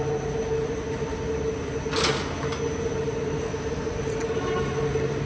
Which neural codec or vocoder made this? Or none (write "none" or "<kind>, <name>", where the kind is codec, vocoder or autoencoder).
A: none